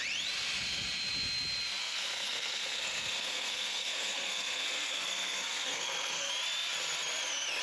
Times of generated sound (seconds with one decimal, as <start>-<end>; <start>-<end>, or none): 1.8-6.3